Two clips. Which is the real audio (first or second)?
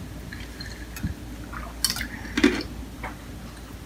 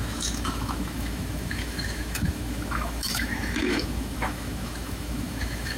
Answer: first